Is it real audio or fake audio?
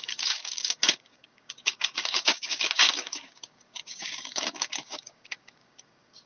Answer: fake